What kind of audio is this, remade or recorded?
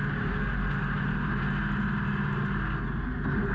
recorded